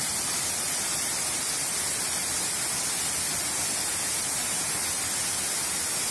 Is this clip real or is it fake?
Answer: real